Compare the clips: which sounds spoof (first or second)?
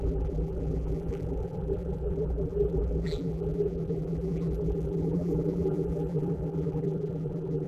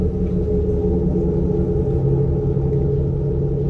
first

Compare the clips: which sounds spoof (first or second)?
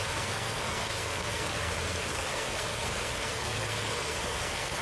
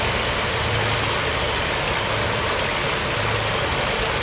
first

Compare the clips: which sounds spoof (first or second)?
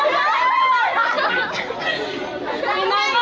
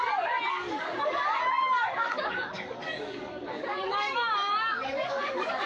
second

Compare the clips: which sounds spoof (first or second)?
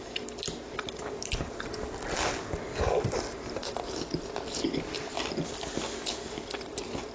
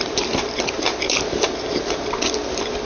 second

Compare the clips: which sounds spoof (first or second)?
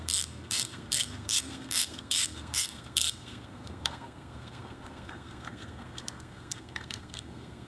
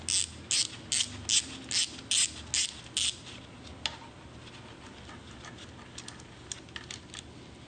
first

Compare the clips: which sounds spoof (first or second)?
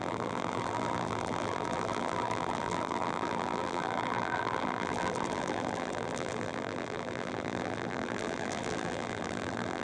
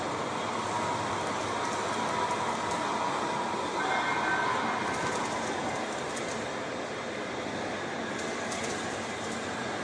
first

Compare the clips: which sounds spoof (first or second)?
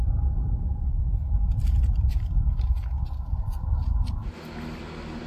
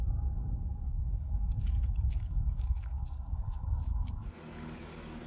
second